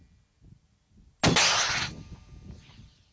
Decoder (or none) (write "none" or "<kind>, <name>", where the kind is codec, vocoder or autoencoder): none